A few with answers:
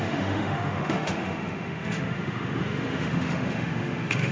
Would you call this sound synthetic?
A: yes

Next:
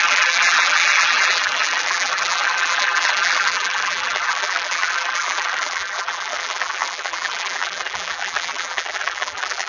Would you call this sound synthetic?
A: yes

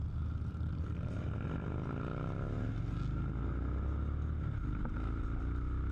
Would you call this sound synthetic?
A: no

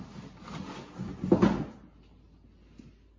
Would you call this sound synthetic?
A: no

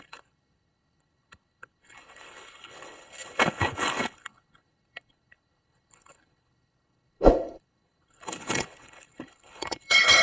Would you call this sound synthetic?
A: yes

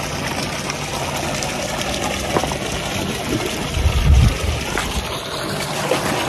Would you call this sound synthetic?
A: no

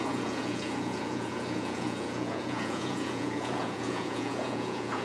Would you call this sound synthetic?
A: yes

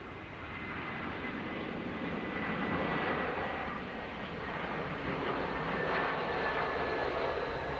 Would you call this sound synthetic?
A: no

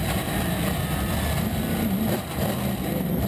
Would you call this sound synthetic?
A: no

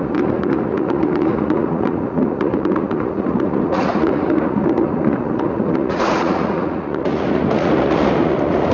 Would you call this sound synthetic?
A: yes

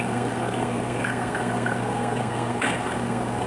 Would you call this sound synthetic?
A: yes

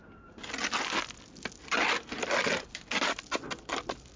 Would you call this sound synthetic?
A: no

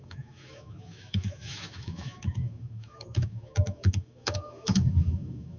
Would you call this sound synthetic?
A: yes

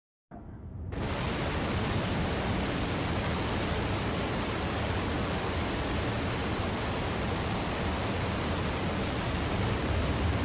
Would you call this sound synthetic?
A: no